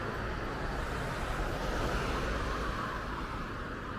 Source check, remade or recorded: recorded